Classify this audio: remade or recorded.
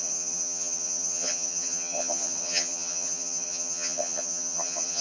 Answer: remade